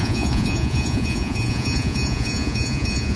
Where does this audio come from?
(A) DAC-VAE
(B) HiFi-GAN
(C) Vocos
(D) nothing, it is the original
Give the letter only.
C